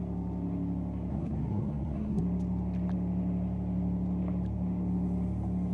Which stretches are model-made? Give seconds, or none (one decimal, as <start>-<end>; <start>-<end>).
1.1-2.2